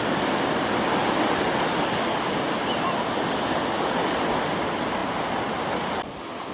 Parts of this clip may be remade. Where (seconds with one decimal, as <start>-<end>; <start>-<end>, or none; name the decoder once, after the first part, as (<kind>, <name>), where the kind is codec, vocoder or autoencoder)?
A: none